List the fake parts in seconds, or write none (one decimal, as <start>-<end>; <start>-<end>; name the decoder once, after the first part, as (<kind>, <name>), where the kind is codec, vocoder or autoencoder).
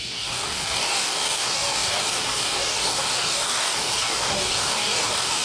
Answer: 0.0-5.4 (codec, DAC)